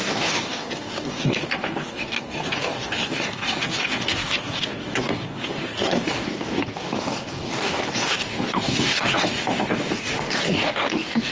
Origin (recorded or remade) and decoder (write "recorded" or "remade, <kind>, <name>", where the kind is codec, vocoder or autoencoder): remade, codec, DAC